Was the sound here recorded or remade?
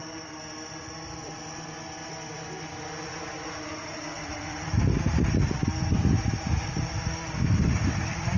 recorded